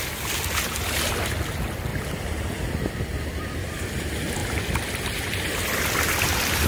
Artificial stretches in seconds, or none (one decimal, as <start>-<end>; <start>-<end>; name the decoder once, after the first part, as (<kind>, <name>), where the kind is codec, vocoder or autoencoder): 1.9-3.2 (vocoder, BigVGAN v2); 4.4-6.7